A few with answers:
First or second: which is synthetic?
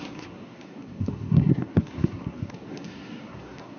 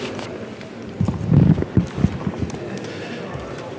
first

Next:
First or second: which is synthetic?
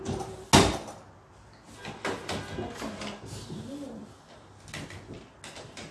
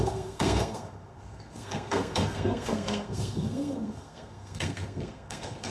second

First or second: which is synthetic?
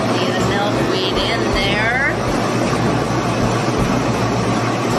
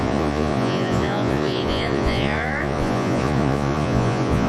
second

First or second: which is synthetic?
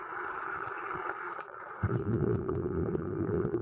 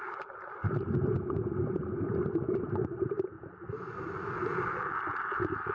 first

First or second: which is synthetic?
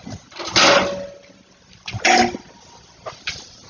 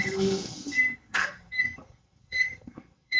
second